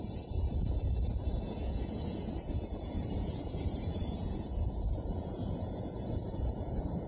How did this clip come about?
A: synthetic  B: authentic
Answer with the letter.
A